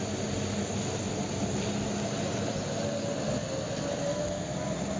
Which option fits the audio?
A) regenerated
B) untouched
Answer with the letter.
B